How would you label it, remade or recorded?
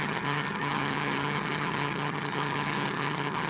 remade